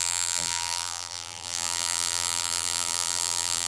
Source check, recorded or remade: remade